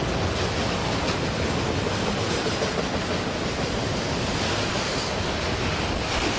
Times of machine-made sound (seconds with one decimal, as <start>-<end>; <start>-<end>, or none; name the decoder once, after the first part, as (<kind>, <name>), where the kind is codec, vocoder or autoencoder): none